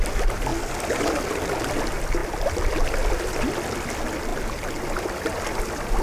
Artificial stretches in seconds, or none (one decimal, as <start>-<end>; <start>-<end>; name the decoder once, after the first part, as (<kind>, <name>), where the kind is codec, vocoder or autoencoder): none